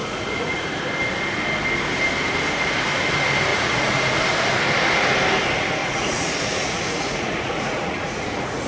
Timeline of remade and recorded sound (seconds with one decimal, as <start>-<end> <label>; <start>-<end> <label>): 0.0-0.8 remade; 0.8-3.5 recorded; 3.5-4.2 remade; 4.2-5.8 recorded; 5.8-8.7 remade